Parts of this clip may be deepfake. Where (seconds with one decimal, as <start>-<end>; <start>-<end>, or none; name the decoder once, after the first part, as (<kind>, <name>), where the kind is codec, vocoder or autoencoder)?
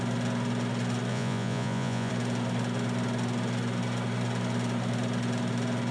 1.1-2.1 (vocoder, Vocos)